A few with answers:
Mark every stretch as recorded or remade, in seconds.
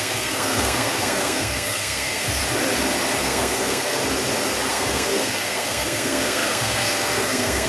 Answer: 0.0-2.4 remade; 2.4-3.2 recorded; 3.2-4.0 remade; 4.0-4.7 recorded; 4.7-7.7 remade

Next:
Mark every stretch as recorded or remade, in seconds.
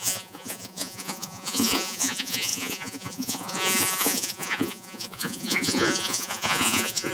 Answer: 0.0-7.1 remade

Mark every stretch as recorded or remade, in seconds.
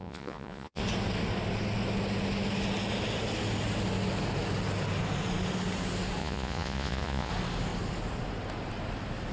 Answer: 0.0-0.8 remade; 0.8-6.2 recorded; 6.2-7.3 remade; 7.3-9.3 recorded